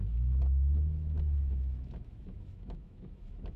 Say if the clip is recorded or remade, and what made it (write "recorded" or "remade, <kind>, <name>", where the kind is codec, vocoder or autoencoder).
remade, autoencoder, DAC-VAE